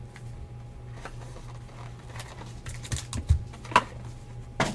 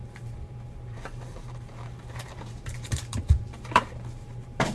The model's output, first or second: second